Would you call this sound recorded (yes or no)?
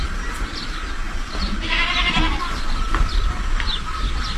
yes